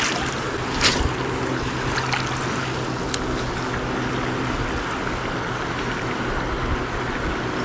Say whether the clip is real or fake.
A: real